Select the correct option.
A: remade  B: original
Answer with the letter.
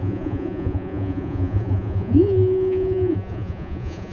A